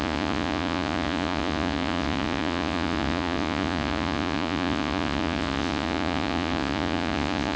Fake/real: fake